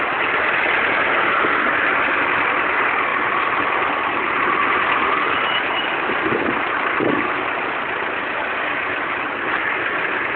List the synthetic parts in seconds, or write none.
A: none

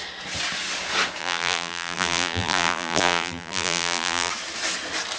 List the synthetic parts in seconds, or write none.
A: 1.2-4.3 (vocoder, BigVGAN v2)

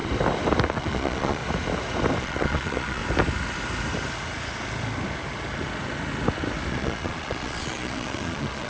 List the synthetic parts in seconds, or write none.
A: 0.7-1.4 (vocoder, Vocos); 2.2-3.0; 6.7-8.7

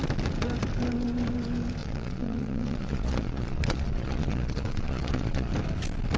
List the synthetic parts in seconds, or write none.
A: 1.8-5.5 (vocoder, Vocos)